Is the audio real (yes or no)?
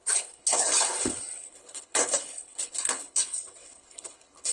no